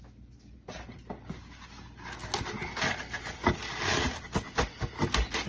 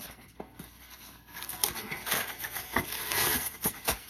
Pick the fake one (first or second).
second